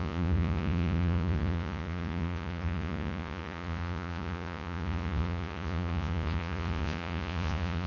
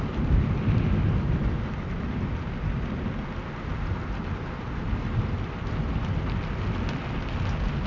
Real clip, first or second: second